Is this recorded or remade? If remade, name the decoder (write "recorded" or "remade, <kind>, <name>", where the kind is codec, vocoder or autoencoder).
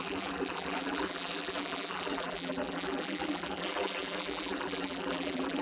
remade, vocoder, BigVGAN v2